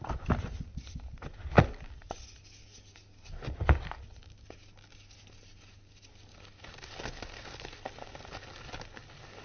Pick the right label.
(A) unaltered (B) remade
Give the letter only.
A